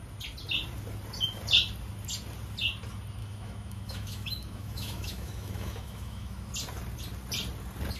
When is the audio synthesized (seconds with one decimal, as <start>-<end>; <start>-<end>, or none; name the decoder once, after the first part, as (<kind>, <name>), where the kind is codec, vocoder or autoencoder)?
3.2-6.5 (autoencoder, DAC-VAE)